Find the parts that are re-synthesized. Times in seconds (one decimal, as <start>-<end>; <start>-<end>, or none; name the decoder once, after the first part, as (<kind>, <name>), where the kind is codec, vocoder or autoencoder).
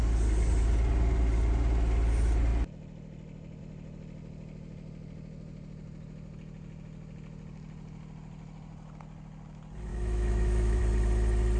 9.9-10.8 (autoencoder, DAC-VAE)